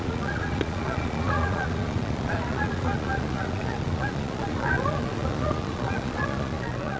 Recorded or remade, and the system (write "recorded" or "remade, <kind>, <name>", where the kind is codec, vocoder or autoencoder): remade, vocoder, Vocos